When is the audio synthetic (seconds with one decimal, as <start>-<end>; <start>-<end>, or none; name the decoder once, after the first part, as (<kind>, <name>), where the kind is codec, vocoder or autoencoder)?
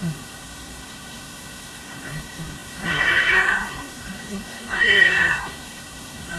0.0-6.4 (codec, SNAC)